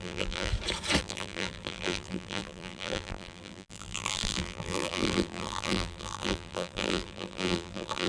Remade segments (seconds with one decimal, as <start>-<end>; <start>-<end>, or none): 0.0-0.5; 1.0-8.1

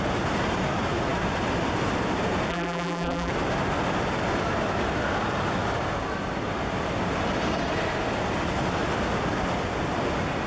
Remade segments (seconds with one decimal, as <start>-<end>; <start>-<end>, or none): 2.5-3.3

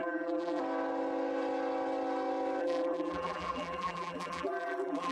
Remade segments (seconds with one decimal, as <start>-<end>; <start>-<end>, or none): 0.0-0.6; 2.6-5.1

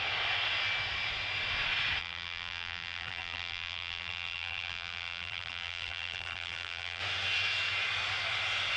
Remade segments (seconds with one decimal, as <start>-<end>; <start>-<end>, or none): 2.0-7.0

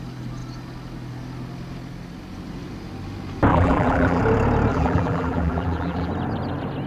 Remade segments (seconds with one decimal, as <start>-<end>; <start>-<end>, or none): 3.5-4.2; 4.7-6.1